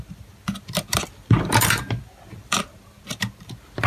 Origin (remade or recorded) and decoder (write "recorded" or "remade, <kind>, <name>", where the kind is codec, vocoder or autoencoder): remade, vocoder, BigVGAN v2